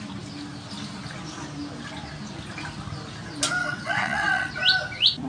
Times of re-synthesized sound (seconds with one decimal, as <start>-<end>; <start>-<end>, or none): 3.6-4.5